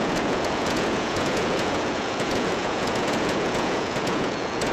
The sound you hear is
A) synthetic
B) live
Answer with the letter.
A